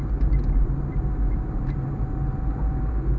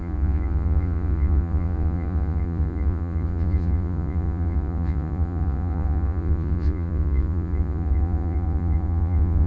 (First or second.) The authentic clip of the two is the first